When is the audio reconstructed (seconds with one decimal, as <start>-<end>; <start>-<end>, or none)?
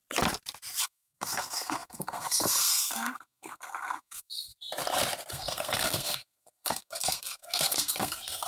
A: 0.8-4.5; 5.3-8.5